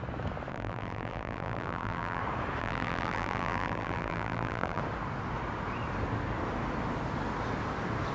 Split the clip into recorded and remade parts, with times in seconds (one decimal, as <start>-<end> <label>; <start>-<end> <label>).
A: 0.0-0.5 recorded; 0.5-2.2 remade; 2.2-2.6 recorded; 2.6-4.8 remade; 4.8-8.1 recorded